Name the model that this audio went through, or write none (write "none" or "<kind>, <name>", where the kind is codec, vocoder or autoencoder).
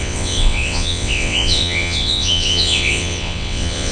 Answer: vocoder, WaveNeXt